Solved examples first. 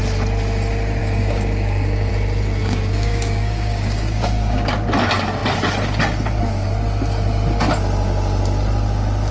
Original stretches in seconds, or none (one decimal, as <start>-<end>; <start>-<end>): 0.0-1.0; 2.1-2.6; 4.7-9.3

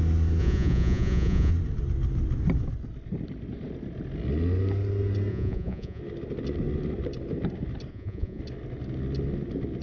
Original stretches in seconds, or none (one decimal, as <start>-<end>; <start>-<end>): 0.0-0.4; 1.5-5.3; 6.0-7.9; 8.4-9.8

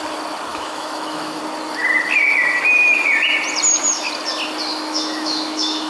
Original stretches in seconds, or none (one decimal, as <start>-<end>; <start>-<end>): 0.0-0.5; 1.4-4.7

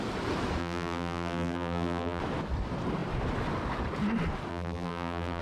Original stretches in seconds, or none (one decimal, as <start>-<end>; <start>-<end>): 0.0-0.6; 2.2-4.5